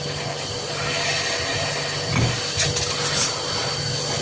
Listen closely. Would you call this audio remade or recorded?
recorded